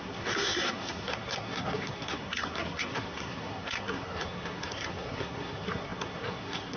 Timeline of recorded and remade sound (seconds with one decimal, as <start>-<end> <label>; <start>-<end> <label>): 0.0-6.8 remade